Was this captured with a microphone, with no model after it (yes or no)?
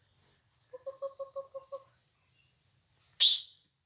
yes